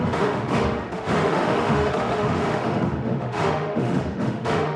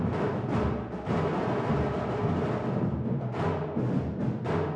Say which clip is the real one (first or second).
second